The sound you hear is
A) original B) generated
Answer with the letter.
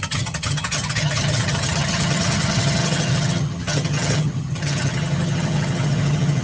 B